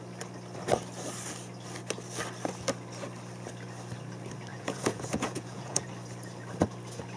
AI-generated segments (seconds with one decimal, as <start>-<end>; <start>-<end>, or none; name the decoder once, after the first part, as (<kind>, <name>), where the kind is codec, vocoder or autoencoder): 4.5-5.9 (vocoder, Vocos)